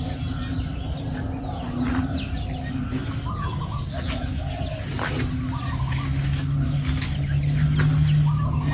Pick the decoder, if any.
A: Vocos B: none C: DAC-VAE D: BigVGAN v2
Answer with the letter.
B